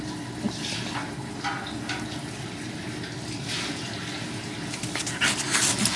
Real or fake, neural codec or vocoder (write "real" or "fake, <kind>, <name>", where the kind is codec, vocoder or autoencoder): real